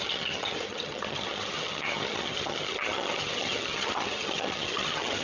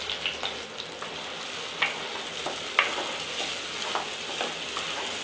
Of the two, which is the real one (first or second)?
second